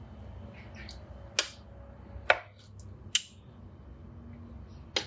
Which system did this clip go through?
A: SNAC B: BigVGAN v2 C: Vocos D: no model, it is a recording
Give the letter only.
D